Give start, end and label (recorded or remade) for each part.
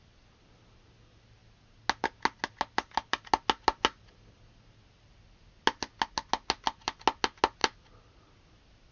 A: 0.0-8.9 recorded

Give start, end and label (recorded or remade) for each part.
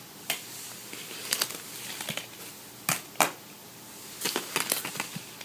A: 0.0-0.8 recorded; 0.8-1.4 remade; 1.4-3.6 recorded; 3.6-4.2 remade; 4.2-5.4 recorded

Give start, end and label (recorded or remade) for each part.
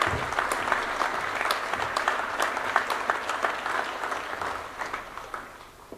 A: 0.0-6.0 recorded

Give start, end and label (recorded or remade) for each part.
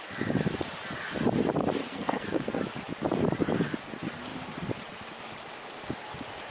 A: 0.0-1.8 recorded; 1.8-2.6 remade; 2.6-6.5 recorded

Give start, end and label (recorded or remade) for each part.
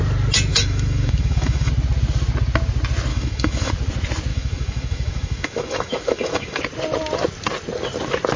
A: 0.0-0.5 recorded; 0.5-1.7 remade; 1.7-3.1 recorded; 3.1-3.7 remade; 3.7-4.3 recorded; 4.3-6.6 remade; 6.6-8.4 recorded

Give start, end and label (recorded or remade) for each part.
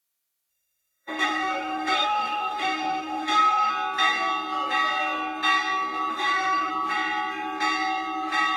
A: 0.0-0.5 recorded; 0.5-3.7 remade; 3.7-6.1 recorded; 6.1-6.7 remade; 6.7-8.6 recorded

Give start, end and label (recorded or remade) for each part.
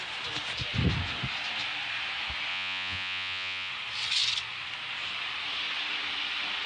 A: 0.0-2.5 recorded; 2.5-3.7 remade; 3.7-6.7 recorded